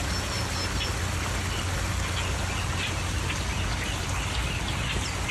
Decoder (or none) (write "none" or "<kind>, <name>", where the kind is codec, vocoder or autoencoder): none